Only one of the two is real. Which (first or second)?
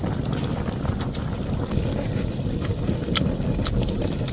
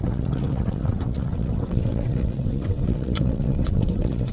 first